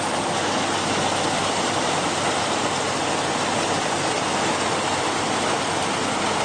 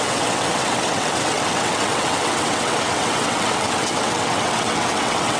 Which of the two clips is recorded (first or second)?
first